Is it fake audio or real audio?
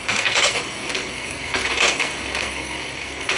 fake